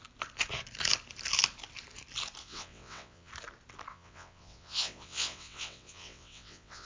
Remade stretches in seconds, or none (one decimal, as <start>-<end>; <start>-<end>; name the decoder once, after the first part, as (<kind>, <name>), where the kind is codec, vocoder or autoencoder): 2.4-3.3 (vocoder, WaveNeXt); 3.9-6.9